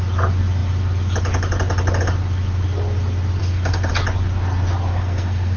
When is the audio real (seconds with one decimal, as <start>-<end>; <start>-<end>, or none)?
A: 0.0-3.4; 3.9-4.9